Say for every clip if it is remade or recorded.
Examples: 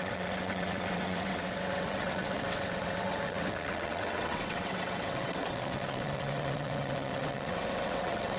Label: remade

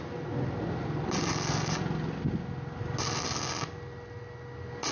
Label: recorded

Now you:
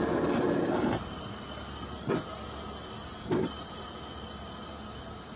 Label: recorded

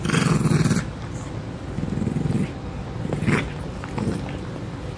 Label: recorded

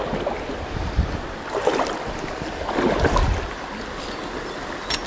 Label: recorded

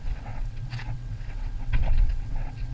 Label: remade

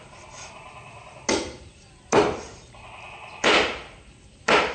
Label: recorded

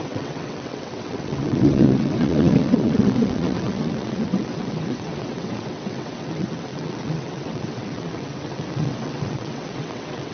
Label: remade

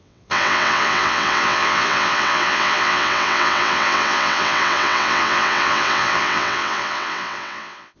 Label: remade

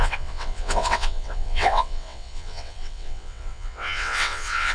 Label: remade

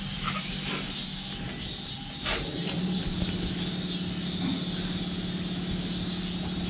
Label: recorded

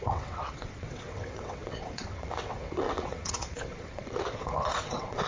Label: remade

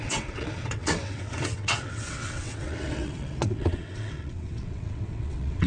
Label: remade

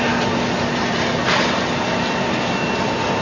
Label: recorded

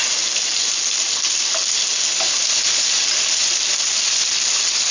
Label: recorded